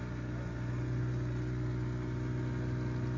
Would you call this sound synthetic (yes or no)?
no